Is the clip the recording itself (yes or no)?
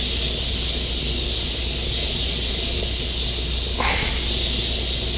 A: yes